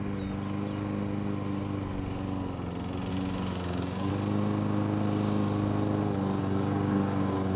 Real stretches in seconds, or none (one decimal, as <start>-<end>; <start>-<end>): 0.0-3.1; 4.1-6.4